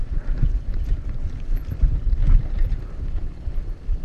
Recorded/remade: recorded